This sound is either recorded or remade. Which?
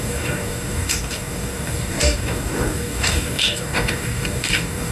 remade